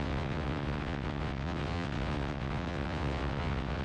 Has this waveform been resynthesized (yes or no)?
yes